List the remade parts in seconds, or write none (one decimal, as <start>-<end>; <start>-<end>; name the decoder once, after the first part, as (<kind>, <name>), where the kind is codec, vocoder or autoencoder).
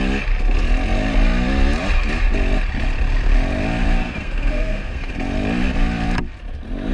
4.0-5.1 (codec, SNAC)